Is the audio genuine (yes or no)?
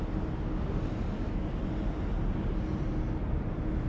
yes